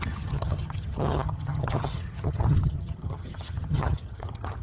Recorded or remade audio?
remade